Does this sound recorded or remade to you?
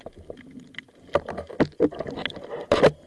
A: recorded